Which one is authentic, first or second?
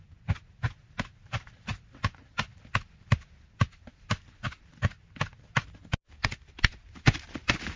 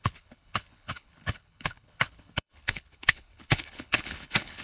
first